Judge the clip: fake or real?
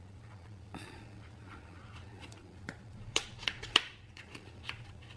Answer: fake